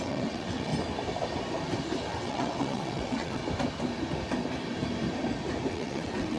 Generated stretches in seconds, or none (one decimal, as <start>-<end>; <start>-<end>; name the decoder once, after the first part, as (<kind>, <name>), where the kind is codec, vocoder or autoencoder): 0.0-0.7 (vocoder, WaveNeXt); 2.1-3.4; 5.7-6.4